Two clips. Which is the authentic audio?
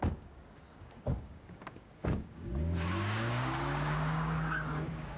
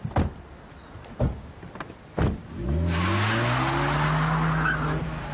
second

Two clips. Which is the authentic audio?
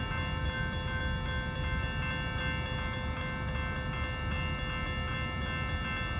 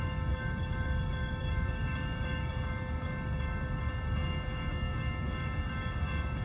first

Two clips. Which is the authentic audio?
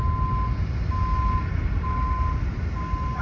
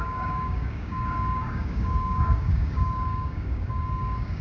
first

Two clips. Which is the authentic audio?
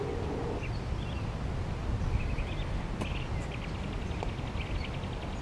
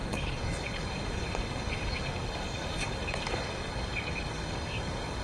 first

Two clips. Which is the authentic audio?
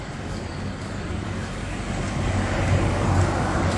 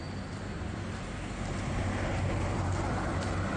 second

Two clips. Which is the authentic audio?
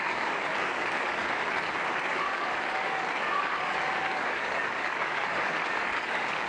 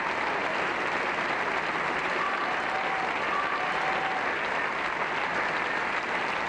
second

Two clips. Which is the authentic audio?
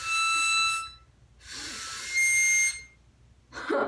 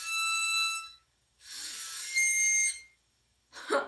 first